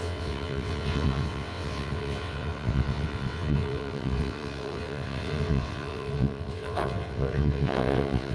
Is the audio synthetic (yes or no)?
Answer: yes